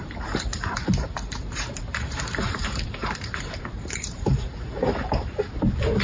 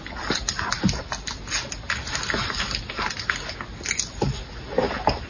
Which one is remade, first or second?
first